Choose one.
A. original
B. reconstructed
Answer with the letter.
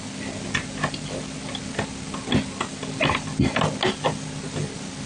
A